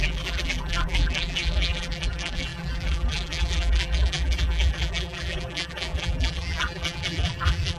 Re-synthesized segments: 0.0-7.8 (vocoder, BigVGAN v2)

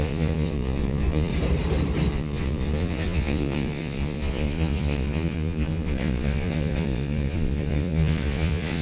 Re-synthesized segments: 0.0-1.3 (vocoder, Vocos); 2.1-8.8

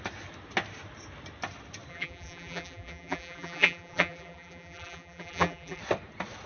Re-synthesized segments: 1.9-5.8 (vocoder, BigVGAN v2)